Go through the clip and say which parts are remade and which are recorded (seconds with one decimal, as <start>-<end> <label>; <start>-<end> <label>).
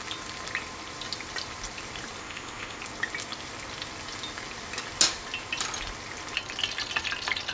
0.0-2.2 recorded; 2.2-2.8 remade; 2.8-7.5 recorded